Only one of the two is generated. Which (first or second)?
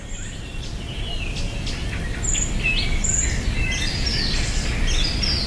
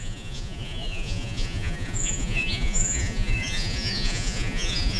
second